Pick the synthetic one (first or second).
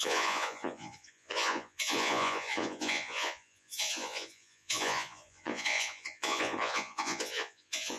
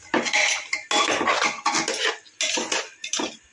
first